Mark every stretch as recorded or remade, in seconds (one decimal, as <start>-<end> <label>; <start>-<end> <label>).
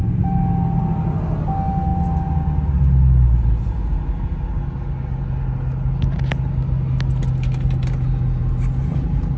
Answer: 0.0-9.4 recorded